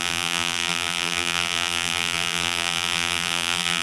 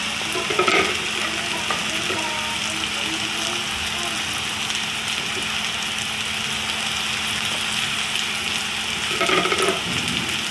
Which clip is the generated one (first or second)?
first